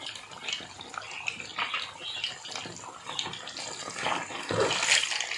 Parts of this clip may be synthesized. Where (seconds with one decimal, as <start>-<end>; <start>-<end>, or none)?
none